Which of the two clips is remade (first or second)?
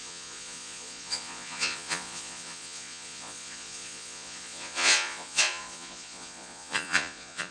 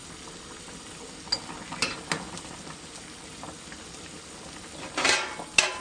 first